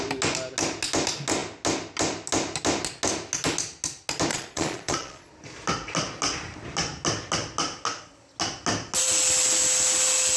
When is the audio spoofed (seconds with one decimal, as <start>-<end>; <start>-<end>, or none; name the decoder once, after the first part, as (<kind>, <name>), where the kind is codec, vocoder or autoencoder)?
4.3-5.3 (vocoder, Vocos)